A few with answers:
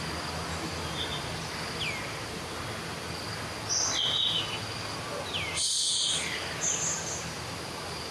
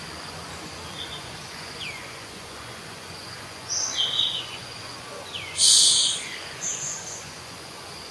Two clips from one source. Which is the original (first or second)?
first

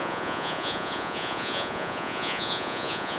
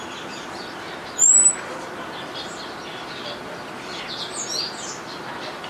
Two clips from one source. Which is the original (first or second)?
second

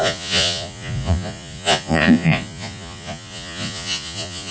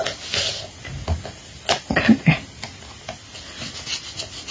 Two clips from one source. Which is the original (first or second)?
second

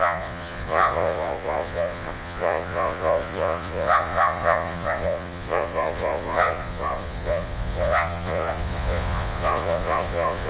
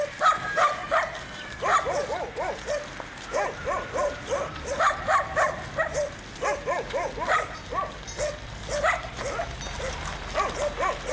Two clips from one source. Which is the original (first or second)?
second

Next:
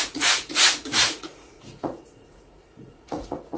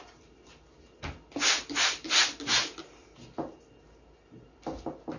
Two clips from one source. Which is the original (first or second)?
second